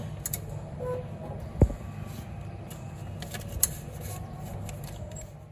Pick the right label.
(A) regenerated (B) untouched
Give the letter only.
B